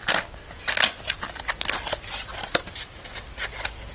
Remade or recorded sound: recorded